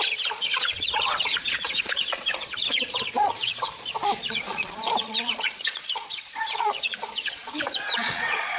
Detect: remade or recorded remade